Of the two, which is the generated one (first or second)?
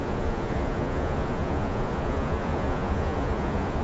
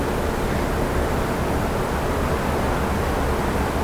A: first